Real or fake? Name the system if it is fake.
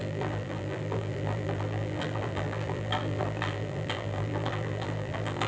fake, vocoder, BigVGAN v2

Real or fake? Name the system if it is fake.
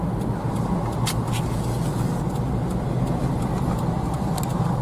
real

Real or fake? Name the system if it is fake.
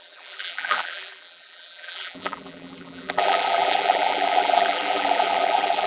fake, vocoder, BigVGAN v2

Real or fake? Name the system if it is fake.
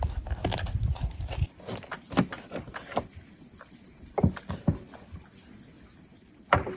real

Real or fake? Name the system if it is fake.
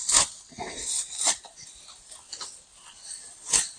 real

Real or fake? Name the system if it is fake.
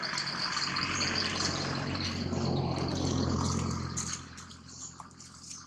fake, vocoder, BigVGAN v2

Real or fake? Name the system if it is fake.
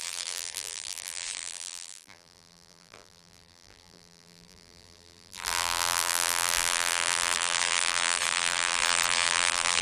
fake, vocoder, BigVGAN v2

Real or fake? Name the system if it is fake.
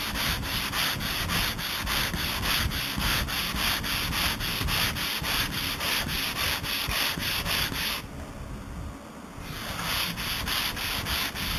real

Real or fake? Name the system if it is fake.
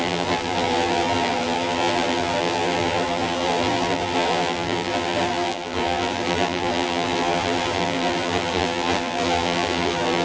fake, vocoder, BigVGAN v2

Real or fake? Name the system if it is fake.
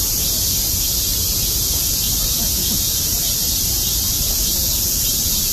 fake, vocoder, BigVGAN v2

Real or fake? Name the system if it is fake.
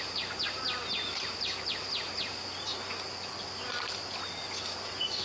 real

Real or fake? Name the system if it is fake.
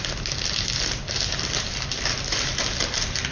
real